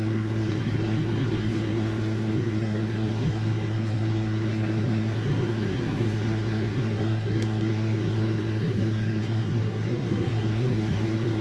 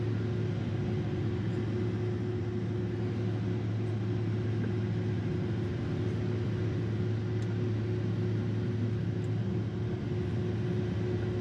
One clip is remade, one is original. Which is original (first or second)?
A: second